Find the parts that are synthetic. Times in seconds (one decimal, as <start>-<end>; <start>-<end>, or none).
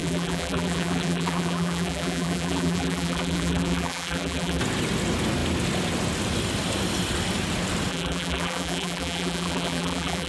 0.0-4.6; 7.9-10.3